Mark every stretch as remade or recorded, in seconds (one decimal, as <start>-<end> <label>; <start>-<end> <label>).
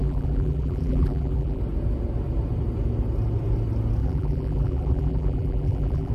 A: 0.0-1.6 remade; 1.6-4.0 recorded; 4.0-6.1 remade